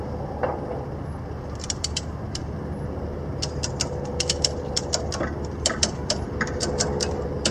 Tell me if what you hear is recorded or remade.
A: remade